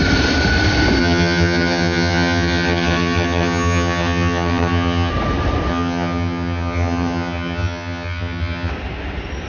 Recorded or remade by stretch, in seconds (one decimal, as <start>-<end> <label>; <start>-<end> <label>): 0.0-1.0 recorded; 1.0-5.1 remade; 5.1-5.7 recorded; 5.7-8.7 remade; 8.7-9.5 recorded